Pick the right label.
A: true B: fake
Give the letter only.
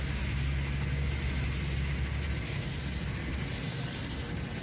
A